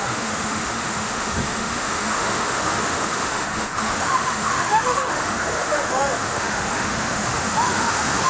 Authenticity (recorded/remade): remade